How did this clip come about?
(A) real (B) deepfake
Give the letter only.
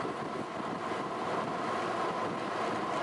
A